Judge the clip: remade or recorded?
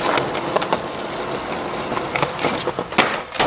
recorded